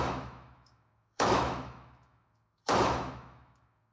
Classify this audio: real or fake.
fake